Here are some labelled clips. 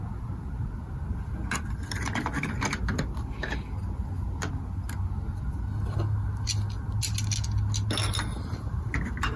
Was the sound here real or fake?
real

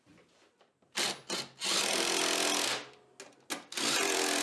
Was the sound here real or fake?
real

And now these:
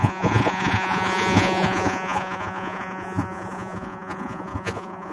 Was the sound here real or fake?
fake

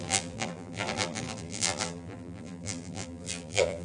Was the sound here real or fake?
fake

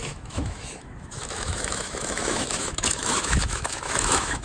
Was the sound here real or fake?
fake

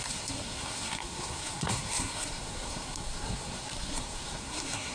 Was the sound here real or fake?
fake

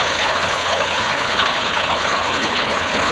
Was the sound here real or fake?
fake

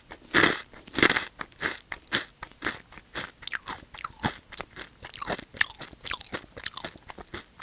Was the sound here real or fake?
real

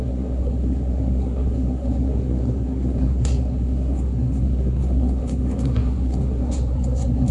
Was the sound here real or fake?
fake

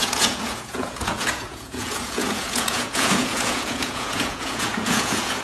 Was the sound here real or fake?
fake